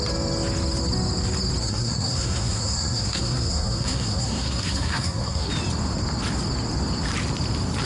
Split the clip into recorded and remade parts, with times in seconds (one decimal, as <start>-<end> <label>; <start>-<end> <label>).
0.0-1.6 recorded; 1.6-5.5 remade; 5.5-7.9 recorded

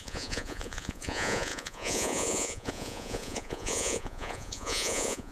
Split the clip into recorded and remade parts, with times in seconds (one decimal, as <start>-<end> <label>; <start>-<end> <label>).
0.0-5.3 remade